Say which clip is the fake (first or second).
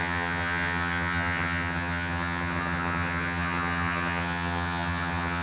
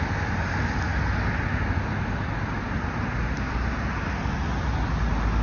first